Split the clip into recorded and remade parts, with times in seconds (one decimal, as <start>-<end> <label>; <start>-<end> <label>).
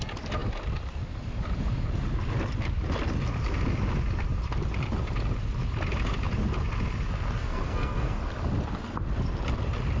0.0-7.4 recorded; 7.4-8.2 remade; 8.2-10.0 recorded